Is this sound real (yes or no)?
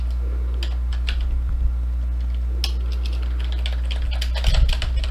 yes